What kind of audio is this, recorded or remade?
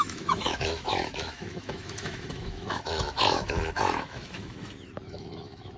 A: remade